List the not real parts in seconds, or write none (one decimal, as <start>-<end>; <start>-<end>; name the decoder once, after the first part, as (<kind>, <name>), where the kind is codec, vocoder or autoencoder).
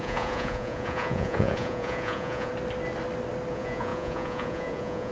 0.0-2.5 (vocoder, Vocos); 3.5-5.1